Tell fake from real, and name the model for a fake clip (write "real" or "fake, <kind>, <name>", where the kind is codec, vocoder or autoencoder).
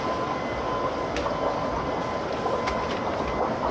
real